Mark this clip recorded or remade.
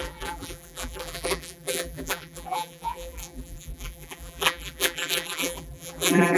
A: remade